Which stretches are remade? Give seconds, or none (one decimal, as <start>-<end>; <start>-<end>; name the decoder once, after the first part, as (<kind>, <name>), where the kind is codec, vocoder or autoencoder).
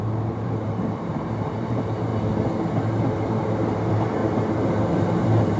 0.0-2.1 (vocoder, BigVGAN v2); 2.9-4.2; 4.8-5.6